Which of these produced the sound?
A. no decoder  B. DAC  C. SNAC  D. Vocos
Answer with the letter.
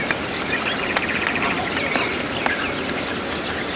A